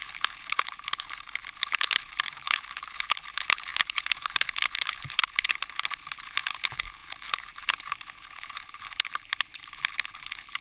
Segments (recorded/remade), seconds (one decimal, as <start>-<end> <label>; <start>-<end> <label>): 0.0-10.6 remade